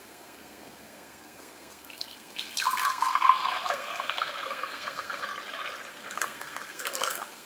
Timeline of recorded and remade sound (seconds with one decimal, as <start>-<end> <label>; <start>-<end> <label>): 0.0-5.3 remade; 5.3-5.9 recorded; 5.9-7.5 remade